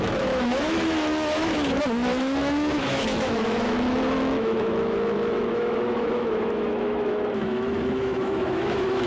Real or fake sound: fake